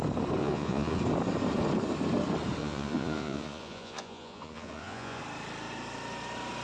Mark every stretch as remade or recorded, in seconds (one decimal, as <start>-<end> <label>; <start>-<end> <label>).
0.0-0.4 recorded; 0.4-1.0 remade; 1.0-2.6 recorded; 2.6-5.2 remade; 5.2-6.6 recorded